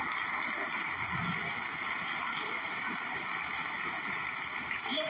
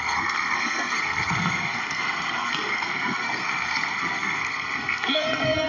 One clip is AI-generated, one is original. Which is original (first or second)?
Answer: first